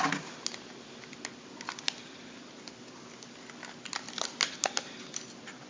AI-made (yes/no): no